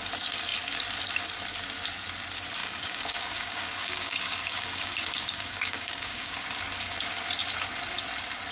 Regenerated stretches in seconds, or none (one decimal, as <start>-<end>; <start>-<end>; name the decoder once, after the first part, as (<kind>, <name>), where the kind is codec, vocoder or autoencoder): 2.6-6.3 (codec, DAC)